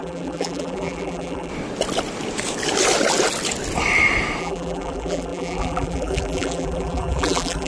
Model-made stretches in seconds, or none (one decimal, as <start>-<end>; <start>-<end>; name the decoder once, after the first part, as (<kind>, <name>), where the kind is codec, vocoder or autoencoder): 0.0-1.5 (vocoder, BigVGAN v2); 4.4-7.7